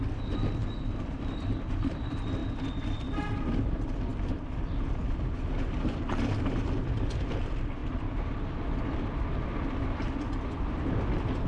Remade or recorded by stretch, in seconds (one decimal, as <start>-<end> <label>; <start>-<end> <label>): 0.0-2.4 remade; 2.4-3.3 recorded; 3.3-4.1 remade; 4.1-5.6 recorded; 5.6-7.8 remade; 7.8-8.6 recorded; 8.6-11.5 remade